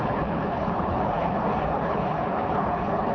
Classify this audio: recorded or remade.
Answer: remade